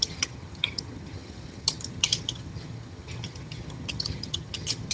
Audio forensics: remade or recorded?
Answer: remade